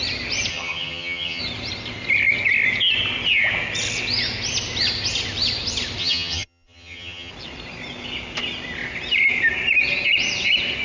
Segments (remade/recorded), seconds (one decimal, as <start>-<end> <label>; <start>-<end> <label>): 0.0-0.5 recorded; 0.5-1.4 remade; 1.4-6.0 recorded; 6.0-7.3 remade; 7.3-10.8 recorded